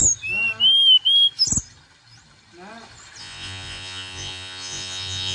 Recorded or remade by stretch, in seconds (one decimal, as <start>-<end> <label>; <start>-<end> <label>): 0.0-3.2 recorded; 3.2-5.3 remade